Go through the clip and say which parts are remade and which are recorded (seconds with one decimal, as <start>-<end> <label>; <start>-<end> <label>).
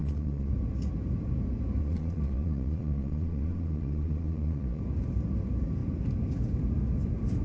0.0-0.5 remade; 0.5-1.8 recorded; 1.8-4.8 remade; 4.8-7.4 recorded